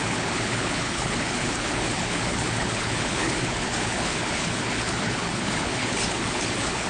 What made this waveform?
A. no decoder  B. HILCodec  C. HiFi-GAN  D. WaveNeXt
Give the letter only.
B